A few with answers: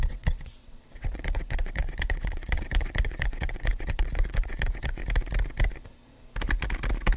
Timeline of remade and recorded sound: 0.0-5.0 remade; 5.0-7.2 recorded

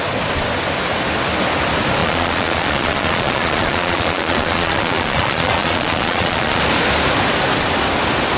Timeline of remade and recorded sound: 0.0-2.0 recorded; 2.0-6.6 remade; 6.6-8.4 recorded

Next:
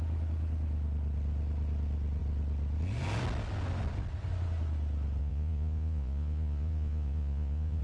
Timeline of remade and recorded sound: 0.0-5.2 recorded; 5.2-7.8 remade